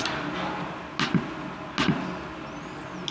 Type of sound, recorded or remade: recorded